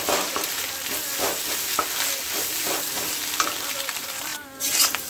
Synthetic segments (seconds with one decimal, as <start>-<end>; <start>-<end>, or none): 0.0-0.6; 3.7-5.1